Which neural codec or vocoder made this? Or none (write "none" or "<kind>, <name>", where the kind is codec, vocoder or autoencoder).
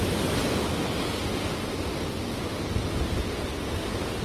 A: none